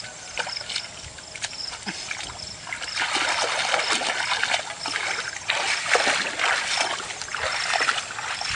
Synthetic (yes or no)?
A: no